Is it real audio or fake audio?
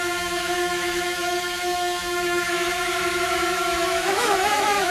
fake